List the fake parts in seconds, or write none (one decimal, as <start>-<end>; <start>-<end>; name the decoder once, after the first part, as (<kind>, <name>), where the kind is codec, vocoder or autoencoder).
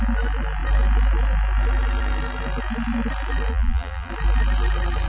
3.5-4.1 (vocoder, BigVGAN v2)